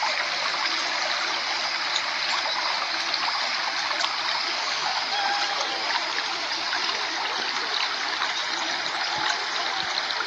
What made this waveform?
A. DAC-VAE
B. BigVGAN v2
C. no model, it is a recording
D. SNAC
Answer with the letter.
C